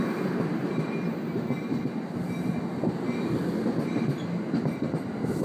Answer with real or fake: real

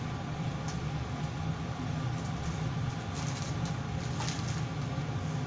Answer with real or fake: real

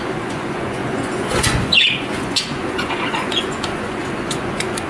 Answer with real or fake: fake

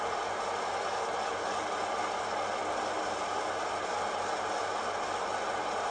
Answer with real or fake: real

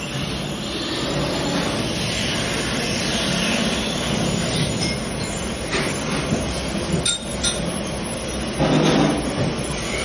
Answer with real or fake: real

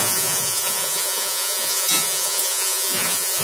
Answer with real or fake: fake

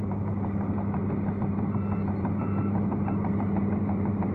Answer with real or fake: fake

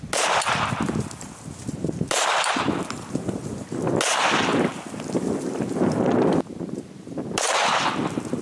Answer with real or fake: real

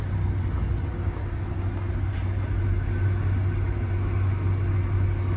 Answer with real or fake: real